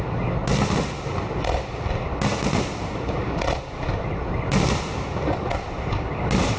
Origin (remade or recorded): recorded